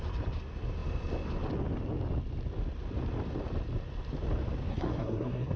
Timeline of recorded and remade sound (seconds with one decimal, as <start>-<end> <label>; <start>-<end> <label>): 0.0-4.7 recorded; 4.7-5.6 remade